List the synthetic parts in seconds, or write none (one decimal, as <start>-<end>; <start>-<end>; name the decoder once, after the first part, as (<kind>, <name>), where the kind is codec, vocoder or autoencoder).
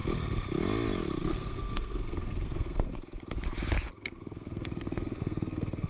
1.2-2.9 (codec, SNAC); 3.9-5.9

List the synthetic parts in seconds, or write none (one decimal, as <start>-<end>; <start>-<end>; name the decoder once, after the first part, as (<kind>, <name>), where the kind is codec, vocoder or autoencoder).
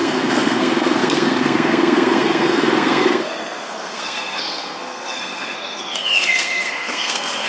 0.0-7.5 (codec, SNAC)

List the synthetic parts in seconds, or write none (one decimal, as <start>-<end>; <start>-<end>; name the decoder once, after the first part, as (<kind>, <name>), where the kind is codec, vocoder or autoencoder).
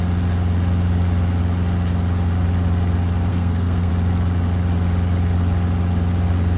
3.3-3.9 (codec, SNAC)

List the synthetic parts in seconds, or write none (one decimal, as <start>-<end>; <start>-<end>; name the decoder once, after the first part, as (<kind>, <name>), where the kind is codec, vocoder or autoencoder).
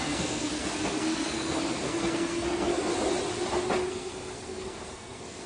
0.0-2.9 (codec, SNAC); 3.9-5.5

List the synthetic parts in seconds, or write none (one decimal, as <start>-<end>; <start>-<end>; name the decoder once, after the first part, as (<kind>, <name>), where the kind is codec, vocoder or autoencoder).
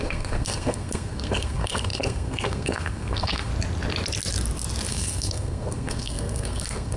0.0-3.5 (codec, SNAC); 4.9-7.0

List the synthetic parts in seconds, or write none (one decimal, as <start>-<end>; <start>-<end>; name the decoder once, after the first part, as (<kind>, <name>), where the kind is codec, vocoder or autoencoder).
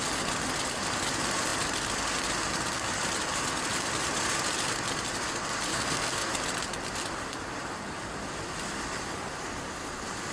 5.7-6.3 (codec, SNAC)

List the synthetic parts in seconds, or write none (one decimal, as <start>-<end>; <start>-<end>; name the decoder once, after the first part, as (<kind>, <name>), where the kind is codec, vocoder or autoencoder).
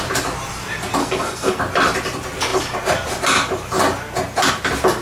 1.0-1.6 (codec, SNAC)